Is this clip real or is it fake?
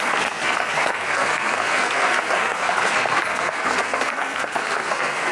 fake